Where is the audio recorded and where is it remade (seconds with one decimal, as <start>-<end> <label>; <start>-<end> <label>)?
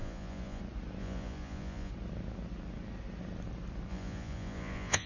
0.0-0.6 remade; 0.6-1.0 recorded; 1.0-1.9 remade; 1.9-3.9 recorded; 3.9-5.1 remade